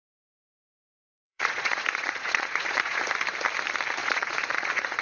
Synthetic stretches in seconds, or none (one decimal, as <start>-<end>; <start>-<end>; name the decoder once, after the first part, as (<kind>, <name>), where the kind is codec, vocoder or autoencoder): 0.0-3.0 (vocoder, Vocos); 4.0-5.0